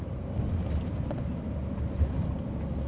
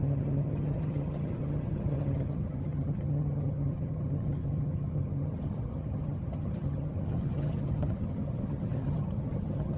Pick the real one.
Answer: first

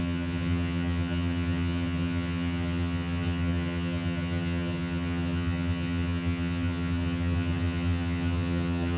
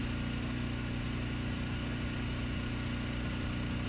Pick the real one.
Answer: second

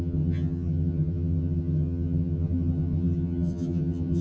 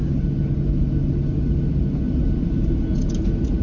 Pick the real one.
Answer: second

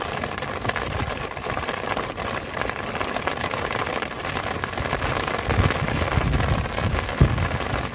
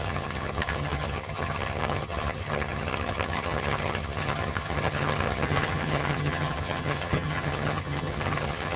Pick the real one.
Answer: first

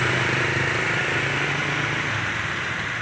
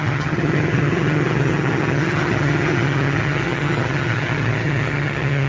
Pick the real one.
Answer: first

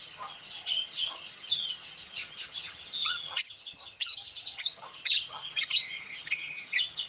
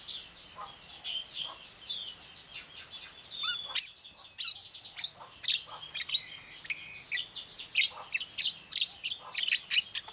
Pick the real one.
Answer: second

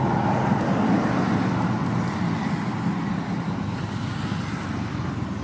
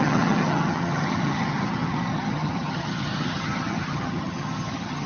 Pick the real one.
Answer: first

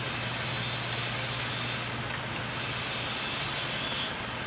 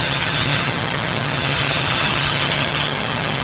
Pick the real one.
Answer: first